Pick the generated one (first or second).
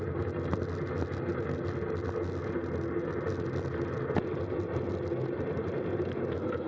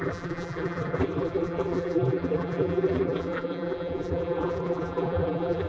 second